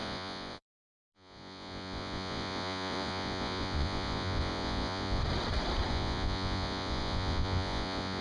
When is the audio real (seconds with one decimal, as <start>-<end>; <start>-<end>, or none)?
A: 5.2-5.9